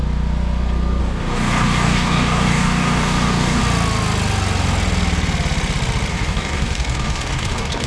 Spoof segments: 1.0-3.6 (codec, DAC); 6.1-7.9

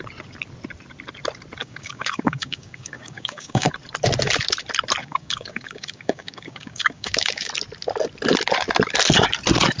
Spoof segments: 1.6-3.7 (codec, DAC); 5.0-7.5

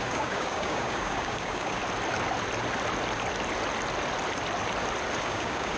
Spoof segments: 0.0-1.8 (codec, DAC); 5.2-5.8

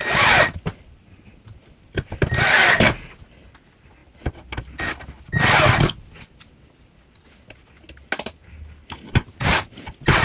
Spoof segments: none

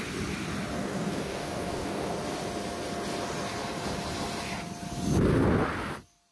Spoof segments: 0.8-2.1 (codec, DAC)

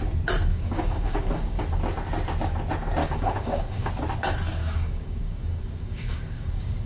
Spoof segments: 0.5-1.6 (codec, DAC); 3.0-3.9; 4.6-6.9